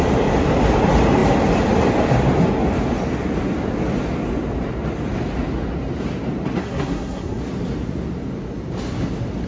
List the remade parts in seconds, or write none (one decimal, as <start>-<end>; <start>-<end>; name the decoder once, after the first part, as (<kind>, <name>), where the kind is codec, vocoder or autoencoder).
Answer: 6.6-7.4 (codec, SNAC)

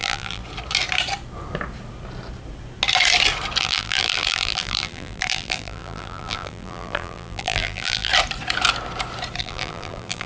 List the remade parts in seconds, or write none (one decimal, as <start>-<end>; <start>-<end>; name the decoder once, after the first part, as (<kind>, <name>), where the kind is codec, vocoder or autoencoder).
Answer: 0.0-0.4 (vocoder, BigVGAN v2); 3.6-8.1; 9.4-10.3